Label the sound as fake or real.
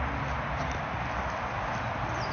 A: real